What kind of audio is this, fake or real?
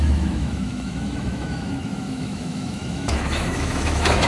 fake